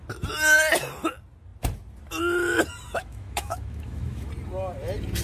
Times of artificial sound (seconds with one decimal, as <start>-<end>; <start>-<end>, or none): 3.0-4.3